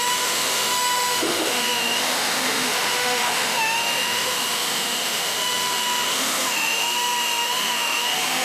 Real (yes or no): no